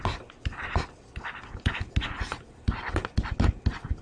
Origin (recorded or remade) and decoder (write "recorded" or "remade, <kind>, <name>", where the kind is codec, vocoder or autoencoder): recorded